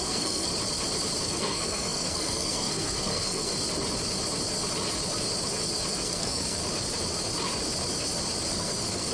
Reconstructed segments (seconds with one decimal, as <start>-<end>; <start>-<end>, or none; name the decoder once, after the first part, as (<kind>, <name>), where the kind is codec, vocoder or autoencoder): 0.0-0.5 (codec, SNAC); 1.2-3.5; 5.9-6.6; 8.5-9.1